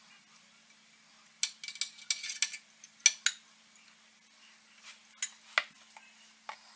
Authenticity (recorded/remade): recorded